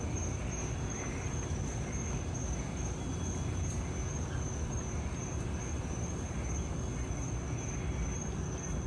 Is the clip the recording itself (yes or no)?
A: yes